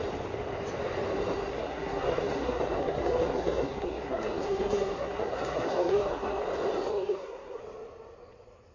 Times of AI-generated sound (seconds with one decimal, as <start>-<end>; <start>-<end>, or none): 1.5-6.4; 6.9-7.6